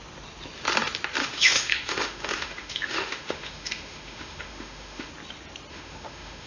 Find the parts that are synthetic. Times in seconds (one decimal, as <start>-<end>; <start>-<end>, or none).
1.2-5.1; 5.7-6.5